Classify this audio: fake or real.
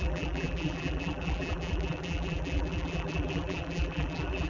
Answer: fake